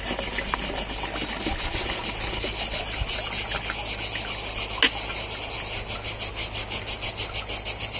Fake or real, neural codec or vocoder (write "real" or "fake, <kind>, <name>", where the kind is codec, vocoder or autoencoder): real